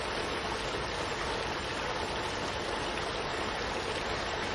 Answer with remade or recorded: recorded